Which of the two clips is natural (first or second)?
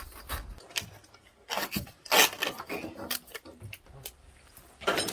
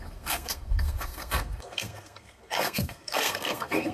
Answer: first